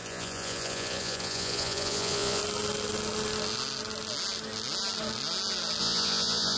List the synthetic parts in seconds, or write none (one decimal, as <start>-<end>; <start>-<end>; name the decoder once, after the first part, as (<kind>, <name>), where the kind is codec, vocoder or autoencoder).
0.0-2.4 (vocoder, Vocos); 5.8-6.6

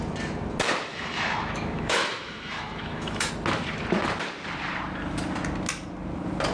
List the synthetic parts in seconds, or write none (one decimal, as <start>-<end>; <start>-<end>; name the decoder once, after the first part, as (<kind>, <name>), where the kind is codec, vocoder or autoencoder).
0.9-3.3 (autoencoder, DAC-VAE)

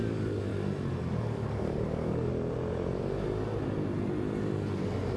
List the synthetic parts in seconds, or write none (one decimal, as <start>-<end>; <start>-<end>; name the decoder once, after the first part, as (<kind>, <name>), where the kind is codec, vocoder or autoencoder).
0.0-0.5 (codec, DAC); 1.1-2.3

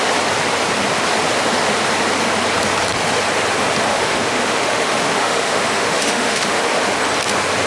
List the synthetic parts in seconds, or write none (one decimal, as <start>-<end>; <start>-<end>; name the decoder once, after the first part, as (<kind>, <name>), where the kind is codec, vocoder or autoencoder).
3.9-6.6 (autoencoder, DAC-VAE)